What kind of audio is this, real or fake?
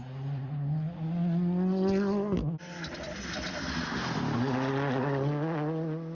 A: real